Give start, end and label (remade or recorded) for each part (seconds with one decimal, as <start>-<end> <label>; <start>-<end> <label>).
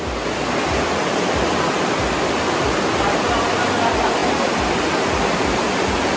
0.0-6.2 recorded